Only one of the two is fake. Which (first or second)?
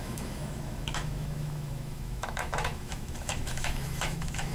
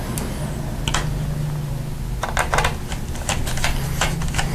first